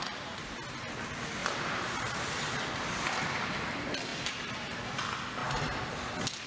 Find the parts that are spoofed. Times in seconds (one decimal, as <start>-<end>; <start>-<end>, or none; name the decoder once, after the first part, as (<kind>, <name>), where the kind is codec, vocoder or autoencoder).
1.4-2.7 (vocoder, BigVGAN v2); 4.1-4.8; 5.4-5.9